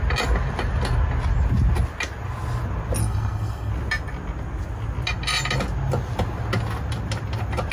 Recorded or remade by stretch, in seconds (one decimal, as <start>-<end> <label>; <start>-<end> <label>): 0.0-3.0 recorded; 3.0-3.7 remade; 3.7-7.7 recorded